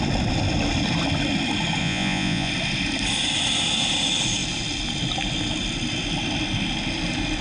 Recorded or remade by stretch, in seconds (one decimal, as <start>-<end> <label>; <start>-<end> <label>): 0.0-1.8 recorded; 1.8-2.5 remade; 2.5-7.4 recorded